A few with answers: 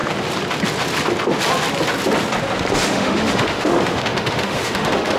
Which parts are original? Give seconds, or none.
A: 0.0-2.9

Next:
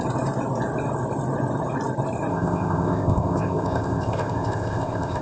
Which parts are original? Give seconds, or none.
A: 0.0-2.3

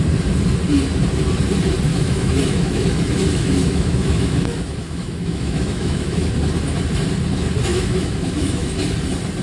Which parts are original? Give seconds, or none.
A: 0.0-1.9; 6.3-7.7; 8.7-9.4

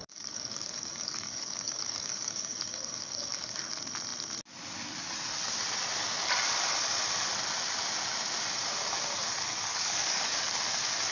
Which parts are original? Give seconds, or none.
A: 3.6-9.7; 10.4-11.1

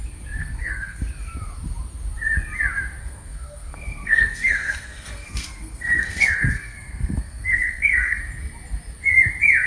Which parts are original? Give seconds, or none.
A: 0.0-0.4; 1.0-3.0; 8.2-9.7

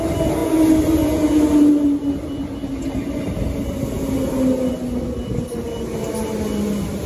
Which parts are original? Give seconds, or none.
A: 0.0-7.1

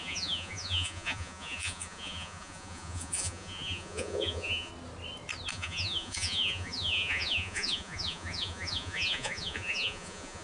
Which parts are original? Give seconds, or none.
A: 4.7-5.5

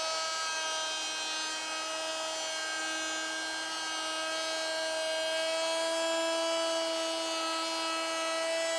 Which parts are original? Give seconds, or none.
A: 0.0-8.8